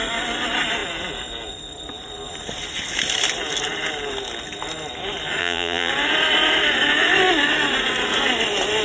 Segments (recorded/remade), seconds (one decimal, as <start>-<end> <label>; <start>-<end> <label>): 0.0-5.4 recorded; 5.4-5.9 remade; 5.9-8.8 recorded